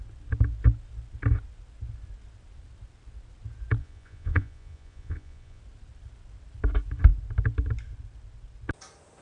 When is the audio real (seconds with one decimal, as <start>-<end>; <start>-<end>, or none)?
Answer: 0.0-3.8; 5.6-9.2

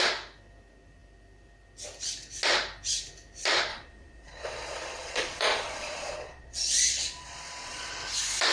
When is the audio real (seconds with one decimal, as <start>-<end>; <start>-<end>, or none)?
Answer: 0.0-3.7; 7.9-8.5

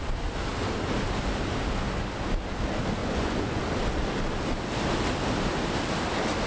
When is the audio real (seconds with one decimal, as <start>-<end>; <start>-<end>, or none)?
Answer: 0.0-3.0; 3.6-6.5

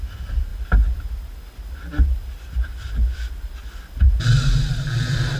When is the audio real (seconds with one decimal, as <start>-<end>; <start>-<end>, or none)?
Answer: 0.0-5.4

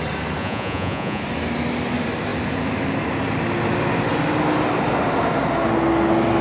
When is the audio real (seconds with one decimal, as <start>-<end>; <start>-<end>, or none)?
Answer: 0.0-0.4; 1.2-6.4

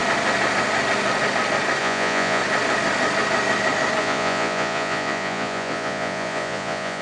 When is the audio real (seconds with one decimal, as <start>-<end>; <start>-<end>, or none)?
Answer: 0.0-1.8; 2.4-4.0

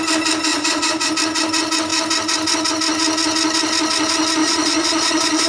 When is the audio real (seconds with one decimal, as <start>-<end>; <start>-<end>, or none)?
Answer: 0.0-0.5; 1.1-4.4

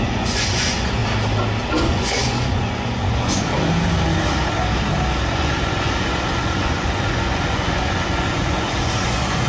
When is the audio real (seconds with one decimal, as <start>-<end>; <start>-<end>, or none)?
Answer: 1.0-1.8; 3.5-5.3